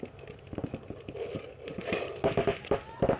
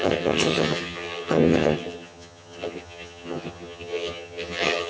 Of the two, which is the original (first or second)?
first